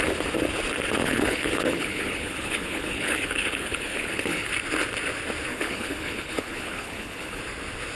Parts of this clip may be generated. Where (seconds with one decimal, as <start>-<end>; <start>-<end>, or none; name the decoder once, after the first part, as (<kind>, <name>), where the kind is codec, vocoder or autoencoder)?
1.0-4.5 (codec, HILCodec); 5.5-7.4